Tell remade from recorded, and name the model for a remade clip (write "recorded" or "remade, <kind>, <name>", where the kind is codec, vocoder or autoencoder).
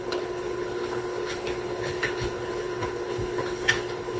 remade, codec, HILCodec